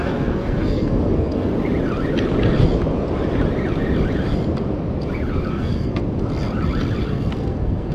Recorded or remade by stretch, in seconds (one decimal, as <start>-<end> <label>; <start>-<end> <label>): 0.0-1.5 remade; 1.5-5.5 recorded; 5.5-6.0 remade; 6.0-7.1 recorded; 7.1-7.9 remade